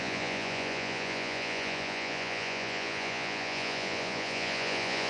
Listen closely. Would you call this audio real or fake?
fake